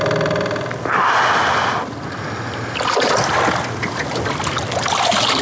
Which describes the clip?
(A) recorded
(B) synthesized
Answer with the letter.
A